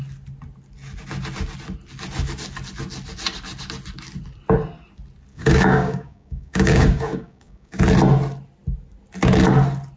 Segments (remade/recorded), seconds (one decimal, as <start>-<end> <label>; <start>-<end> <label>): 0.0-5.3 recorded; 5.3-7.8 remade; 7.8-10.0 recorded